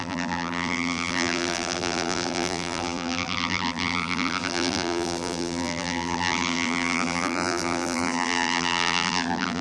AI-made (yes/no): yes